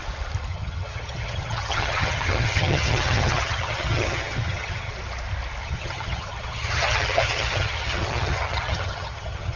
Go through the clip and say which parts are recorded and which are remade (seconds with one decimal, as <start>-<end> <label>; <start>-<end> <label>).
0.0-0.5 recorded; 0.5-4.9 remade; 4.9-5.6 recorded; 5.6-9.6 remade